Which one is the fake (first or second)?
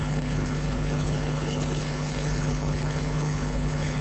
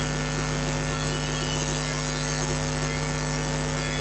first